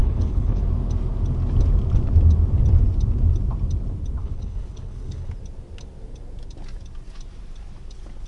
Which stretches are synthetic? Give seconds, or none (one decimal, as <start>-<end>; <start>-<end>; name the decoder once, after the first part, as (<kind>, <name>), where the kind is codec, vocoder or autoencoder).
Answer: 0.0-0.6 (codec, HILCodec); 4.2-5.3